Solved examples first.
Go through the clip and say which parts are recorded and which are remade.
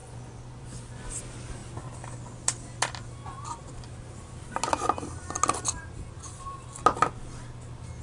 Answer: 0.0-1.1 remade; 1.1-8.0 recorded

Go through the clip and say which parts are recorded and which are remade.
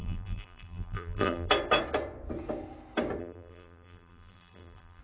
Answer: 0.0-1.5 remade; 1.5-3.2 recorded; 3.2-5.0 remade